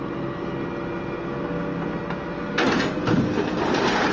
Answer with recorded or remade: recorded